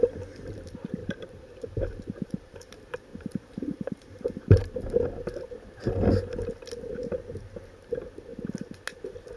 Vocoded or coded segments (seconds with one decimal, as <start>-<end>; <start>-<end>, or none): 1.0-2.7; 3.1-4.9